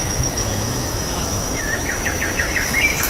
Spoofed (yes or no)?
yes